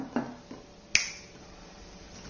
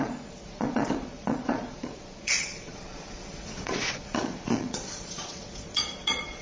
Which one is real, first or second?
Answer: first